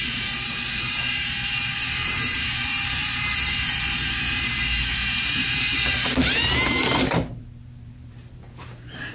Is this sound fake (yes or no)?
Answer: yes